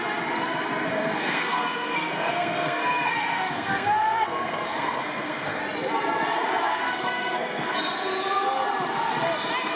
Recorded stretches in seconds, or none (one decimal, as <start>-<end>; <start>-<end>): 0.0-0.9; 5.6-6.7; 7.7-9.8